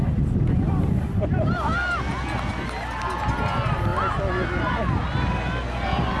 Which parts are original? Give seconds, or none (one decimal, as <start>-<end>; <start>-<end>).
0.0-6.2